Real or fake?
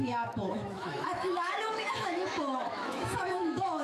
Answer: fake